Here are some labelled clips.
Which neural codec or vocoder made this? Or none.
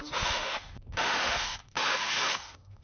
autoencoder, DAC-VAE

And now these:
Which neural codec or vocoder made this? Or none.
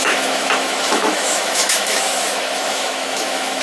autoencoder, DAC-VAE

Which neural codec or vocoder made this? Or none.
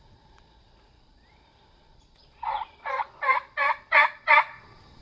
vocoder, Vocos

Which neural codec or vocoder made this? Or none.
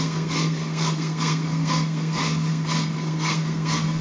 codec, SNAC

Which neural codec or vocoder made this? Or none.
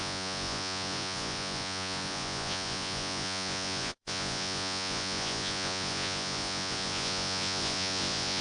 vocoder, Vocos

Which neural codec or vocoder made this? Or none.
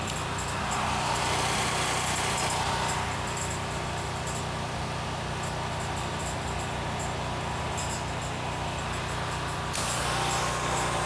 none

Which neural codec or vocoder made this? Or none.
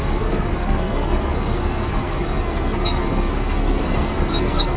codec, SNAC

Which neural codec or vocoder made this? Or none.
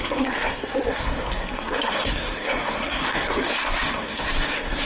codec, SNAC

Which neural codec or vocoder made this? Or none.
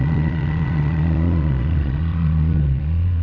vocoder, Vocos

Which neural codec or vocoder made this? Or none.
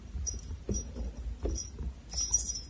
none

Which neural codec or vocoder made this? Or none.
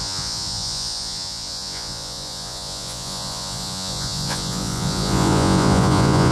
vocoder, Vocos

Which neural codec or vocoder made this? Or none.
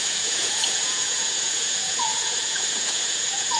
vocoder, Vocos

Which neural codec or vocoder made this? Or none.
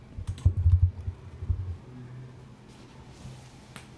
none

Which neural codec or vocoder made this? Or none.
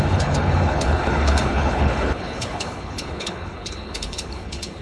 codec, HILCodec